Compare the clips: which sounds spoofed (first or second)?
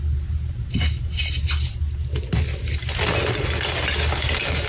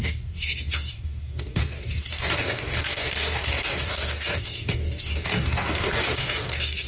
second